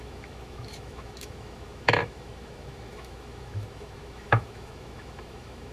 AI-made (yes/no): yes